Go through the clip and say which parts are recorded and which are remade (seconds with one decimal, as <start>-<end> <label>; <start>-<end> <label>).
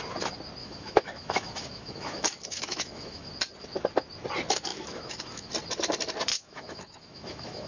0.0-0.6 recorded; 0.6-3.3 remade; 3.3-4.7 recorded; 4.7-5.5 remade; 5.5-6.3 recorded; 6.3-7.7 remade